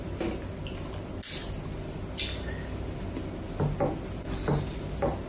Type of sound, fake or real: real